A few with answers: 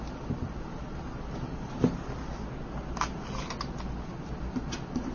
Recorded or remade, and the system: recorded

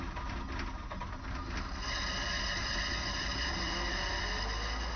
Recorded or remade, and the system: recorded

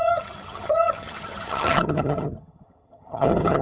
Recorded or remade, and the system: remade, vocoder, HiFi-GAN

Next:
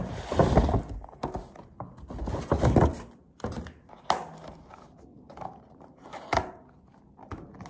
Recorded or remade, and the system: recorded